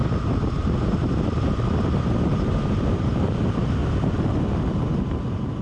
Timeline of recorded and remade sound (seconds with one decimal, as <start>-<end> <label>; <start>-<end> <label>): 0.0-3.8 remade; 3.8-5.1 recorded; 5.1-5.6 remade